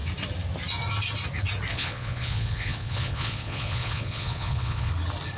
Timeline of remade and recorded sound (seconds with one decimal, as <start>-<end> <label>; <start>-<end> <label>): 0.0-1.7 recorded; 1.7-4.9 remade; 4.9-5.4 recorded